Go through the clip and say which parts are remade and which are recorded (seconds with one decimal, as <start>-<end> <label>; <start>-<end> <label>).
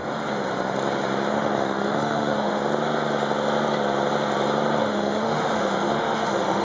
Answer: 0.0-1.3 recorded; 1.3-2.6 remade; 2.6-4.8 recorded; 4.8-6.6 remade